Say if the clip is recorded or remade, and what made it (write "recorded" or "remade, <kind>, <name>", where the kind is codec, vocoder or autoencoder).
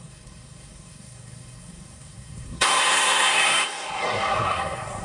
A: remade, codec, SNAC